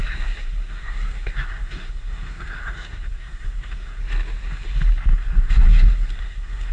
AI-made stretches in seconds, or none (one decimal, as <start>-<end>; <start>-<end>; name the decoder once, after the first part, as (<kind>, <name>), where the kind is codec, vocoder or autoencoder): 0.0-4.0 (codec, SNAC); 5.1-6.7